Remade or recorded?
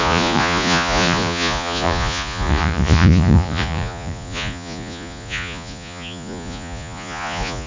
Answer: remade